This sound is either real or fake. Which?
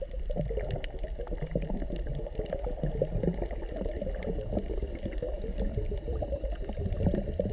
real